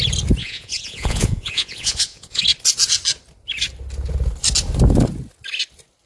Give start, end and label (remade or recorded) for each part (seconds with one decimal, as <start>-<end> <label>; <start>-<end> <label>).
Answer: 0.0-0.4 recorded; 0.4-2.4 remade; 2.4-6.1 recorded

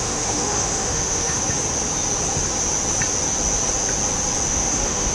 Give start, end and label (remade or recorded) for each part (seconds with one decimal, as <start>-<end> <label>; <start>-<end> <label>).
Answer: 0.0-1.4 remade; 1.4-4.5 recorded; 4.5-5.1 remade

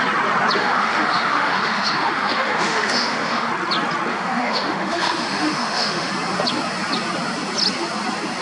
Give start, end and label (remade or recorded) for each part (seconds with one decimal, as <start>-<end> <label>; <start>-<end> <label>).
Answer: 0.0-0.6 recorded; 0.6-3.5 remade; 3.5-4.1 recorded; 4.1-6.1 remade; 6.1-8.4 recorded

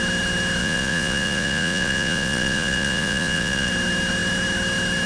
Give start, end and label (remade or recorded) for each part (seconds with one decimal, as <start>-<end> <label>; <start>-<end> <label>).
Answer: 0.0-0.6 recorded; 0.6-3.7 remade; 3.7-5.1 recorded